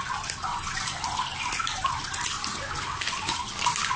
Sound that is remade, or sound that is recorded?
recorded